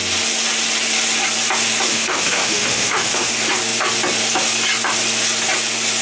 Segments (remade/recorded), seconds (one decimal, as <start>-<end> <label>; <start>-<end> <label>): 0.0-1.9 recorded; 1.9-3.3 remade; 3.3-6.0 recorded

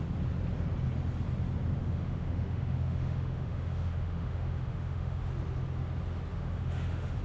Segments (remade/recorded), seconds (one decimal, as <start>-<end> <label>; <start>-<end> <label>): 0.0-1.8 recorded; 1.8-5.3 remade; 5.3-6.3 recorded; 6.3-7.2 remade

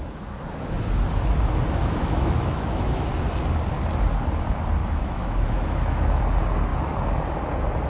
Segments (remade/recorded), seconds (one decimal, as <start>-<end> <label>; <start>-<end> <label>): 0.0-1.9 recorded; 1.9-3.1 remade; 3.1-4.8 recorded; 4.8-6.2 remade; 6.2-7.9 recorded

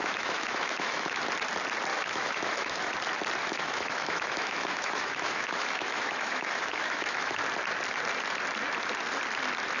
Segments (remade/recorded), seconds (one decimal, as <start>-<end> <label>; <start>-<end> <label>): 0.0-1.2 remade; 1.2-1.9 recorded; 1.9-2.8 remade; 2.8-3.4 recorded; 3.4-7.4 remade; 7.4-9.8 recorded

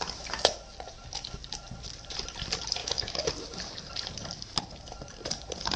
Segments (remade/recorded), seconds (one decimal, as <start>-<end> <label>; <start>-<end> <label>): 0.0-2.8 recorded; 2.8-3.3 remade; 3.3-5.8 recorded

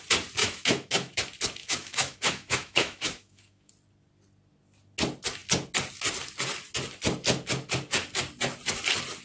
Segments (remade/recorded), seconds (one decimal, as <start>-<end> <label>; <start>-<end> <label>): 0.0-0.4 recorded; 0.4-1.2 remade; 1.2-1.6 recorded; 1.6-3.7 remade; 3.7-9.2 recorded

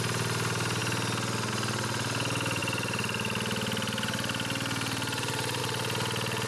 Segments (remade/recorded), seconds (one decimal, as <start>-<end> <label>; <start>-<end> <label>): 0.0-6.5 recorded